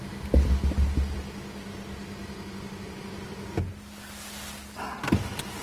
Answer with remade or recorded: recorded